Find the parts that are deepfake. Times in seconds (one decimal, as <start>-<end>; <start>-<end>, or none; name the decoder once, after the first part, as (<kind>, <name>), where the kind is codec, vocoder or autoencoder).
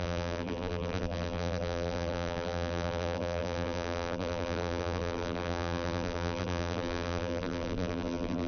0.0-8.5 (vocoder, BigVGAN v2)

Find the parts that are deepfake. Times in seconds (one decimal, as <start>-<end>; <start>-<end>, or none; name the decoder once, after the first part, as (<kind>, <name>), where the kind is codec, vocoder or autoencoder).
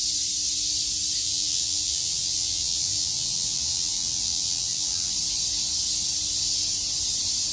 1.2-5.1 (vocoder, BigVGAN v2)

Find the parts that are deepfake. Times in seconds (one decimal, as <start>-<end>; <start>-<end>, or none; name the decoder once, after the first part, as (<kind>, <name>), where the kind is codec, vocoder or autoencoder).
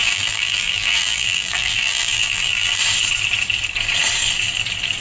0.0-2.8 (vocoder, BigVGAN v2)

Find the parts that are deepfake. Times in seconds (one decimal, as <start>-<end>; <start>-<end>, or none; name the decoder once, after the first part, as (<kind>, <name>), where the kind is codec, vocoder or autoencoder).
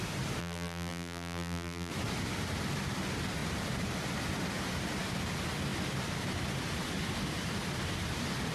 0.4-1.9 (vocoder, BigVGAN v2)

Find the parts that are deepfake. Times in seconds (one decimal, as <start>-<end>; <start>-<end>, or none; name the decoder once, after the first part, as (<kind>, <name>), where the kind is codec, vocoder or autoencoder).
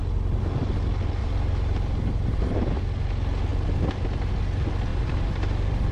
1.2-2.8 (vocoder, BigVGAN v2); 4.9-5.9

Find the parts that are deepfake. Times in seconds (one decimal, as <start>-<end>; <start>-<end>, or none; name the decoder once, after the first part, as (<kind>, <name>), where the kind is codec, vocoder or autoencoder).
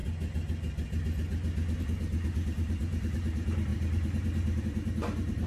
1.8-5.5 (vocoder, BigVGAN v2)